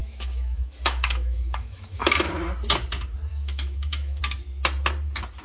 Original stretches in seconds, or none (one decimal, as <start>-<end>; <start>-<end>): 2.3-3.3; 4.2-5.4